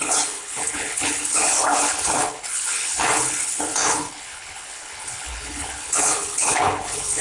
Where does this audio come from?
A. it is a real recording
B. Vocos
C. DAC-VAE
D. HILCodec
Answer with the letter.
D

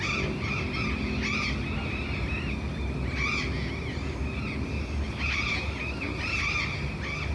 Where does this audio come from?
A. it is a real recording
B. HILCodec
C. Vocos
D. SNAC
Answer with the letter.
A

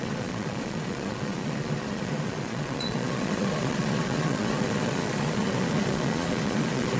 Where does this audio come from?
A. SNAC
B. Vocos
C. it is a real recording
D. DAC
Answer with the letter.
B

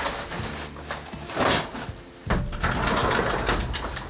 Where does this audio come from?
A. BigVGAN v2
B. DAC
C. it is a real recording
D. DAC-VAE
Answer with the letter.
C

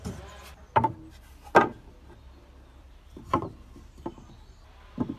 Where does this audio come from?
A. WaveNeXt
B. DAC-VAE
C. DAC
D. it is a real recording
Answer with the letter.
D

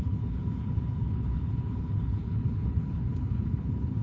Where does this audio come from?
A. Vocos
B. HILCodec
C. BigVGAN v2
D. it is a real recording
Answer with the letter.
B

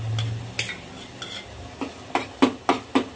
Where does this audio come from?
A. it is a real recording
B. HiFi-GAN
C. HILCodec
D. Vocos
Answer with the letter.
A